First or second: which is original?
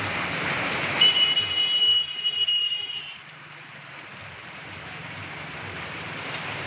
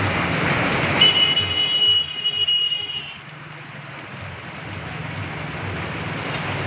second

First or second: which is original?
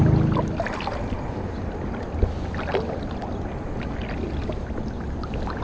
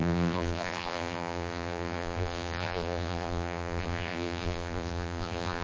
first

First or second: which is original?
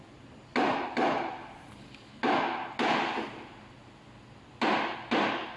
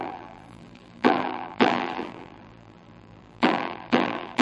first